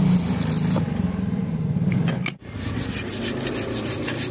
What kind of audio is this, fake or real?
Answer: real